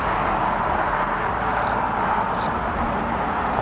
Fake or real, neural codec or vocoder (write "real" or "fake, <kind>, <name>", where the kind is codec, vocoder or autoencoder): real